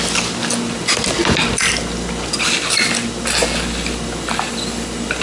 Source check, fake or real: real